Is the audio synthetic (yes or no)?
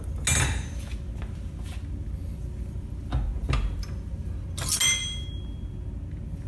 no